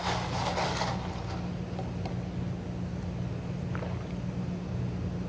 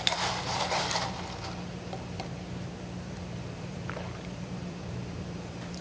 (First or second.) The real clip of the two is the first